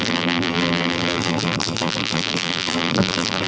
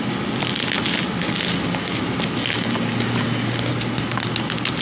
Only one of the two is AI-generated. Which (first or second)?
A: first